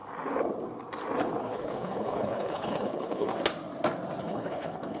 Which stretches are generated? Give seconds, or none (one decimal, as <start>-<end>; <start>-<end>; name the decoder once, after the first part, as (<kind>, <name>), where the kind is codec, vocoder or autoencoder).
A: 1.4-3.3 (codec, HILCodec); 4.2-5.0